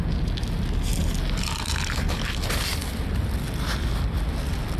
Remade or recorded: recorded